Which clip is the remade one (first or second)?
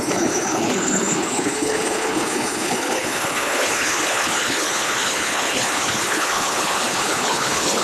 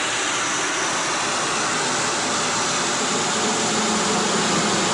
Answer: first